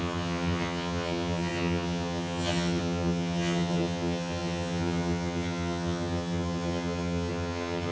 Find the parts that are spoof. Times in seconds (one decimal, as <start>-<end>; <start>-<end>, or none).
0.0-7.9